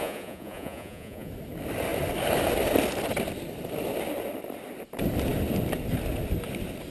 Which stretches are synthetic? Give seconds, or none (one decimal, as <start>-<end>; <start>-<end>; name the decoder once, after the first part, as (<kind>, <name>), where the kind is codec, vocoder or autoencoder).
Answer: 0.0-1.3 (vocoder, Vocos)